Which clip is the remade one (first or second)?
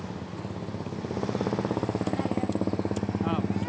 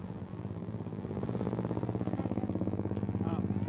second